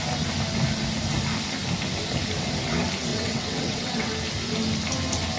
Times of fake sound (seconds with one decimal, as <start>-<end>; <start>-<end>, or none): 3.1-4.1